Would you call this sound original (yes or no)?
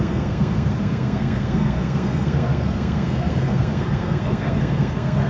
no